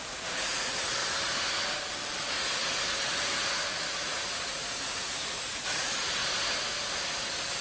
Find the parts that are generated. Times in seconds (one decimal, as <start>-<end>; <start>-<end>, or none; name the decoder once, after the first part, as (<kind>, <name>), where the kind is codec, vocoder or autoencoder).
0.0-1.0 (vocoder, Vocos); 2.2-6.2